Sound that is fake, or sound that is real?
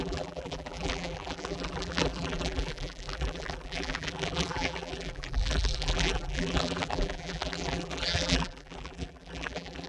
fake